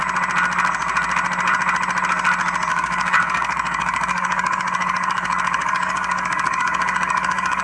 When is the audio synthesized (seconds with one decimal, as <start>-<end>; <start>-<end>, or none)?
2.7-7.6